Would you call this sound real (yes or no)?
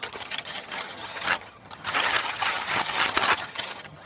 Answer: no